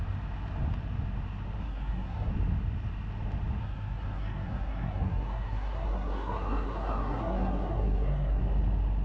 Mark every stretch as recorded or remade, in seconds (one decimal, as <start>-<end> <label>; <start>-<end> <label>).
0.0-1.6 recorded; 1.6-2.3 remade; 2.3-3.6 recorded; 3.6-8.4 remade; 8.4-9.0 recorded